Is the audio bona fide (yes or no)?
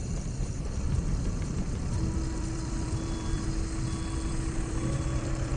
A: no